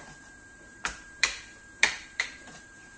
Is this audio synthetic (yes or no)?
yes